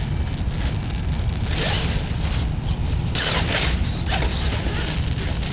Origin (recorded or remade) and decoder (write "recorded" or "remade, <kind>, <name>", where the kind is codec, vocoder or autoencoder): recorded